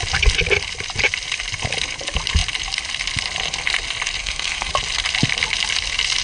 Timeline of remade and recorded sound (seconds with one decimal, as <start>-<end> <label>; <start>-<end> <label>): 0.0-4.2 recorded; 4.2-4.7 remade; 4.7-6.2 recorded